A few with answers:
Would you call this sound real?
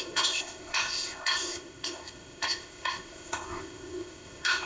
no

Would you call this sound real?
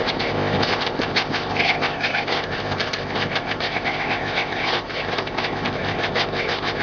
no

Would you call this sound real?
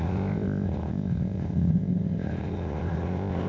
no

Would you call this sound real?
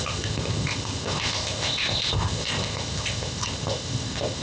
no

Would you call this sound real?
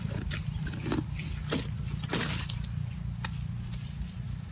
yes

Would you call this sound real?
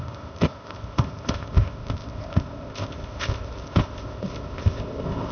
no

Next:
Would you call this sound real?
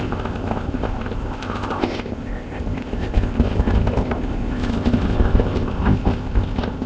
no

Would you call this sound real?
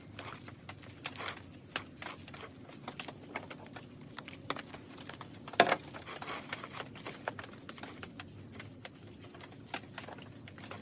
yes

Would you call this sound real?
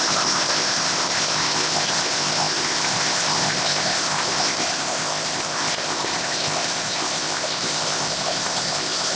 no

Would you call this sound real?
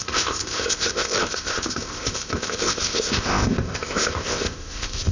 no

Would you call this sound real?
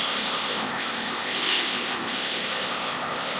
no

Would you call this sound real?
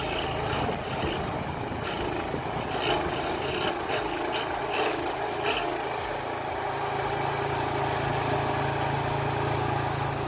yes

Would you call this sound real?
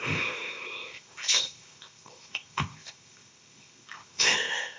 no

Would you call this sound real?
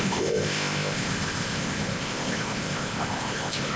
no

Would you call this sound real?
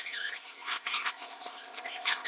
no